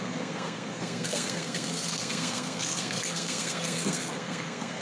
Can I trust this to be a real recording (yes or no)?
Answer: no